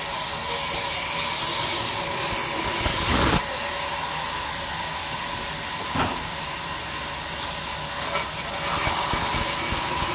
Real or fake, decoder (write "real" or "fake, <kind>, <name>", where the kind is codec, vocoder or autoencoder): real